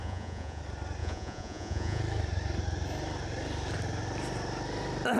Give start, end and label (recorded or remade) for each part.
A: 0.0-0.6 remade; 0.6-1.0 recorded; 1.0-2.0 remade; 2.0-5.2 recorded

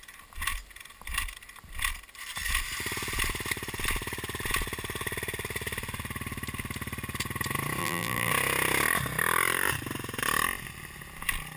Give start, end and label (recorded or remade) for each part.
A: 0.0-7.8 recorded; 7.8-8.3 remade; 8.3-11.6 recorded

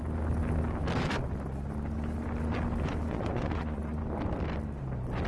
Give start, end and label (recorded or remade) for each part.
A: 0.0-3.1 recorded; 3.1-4.0 remade; 4.0-5.3 recorded